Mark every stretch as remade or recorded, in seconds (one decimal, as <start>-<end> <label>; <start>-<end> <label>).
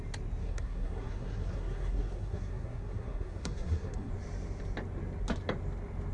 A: 0.0-0.4 recorded; 0.4-4.1 remade; 4.1-6.1 recorded